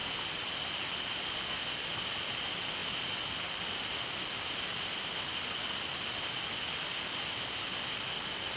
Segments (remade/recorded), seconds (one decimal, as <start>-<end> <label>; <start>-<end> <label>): 0.0-8.6 recorded

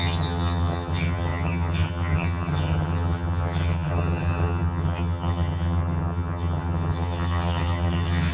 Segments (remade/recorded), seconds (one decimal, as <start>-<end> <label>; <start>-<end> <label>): 0.0-8.3 remade